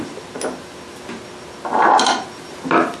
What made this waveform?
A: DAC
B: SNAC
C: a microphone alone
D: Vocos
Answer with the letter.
C